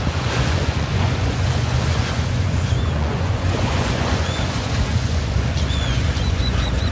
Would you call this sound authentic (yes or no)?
no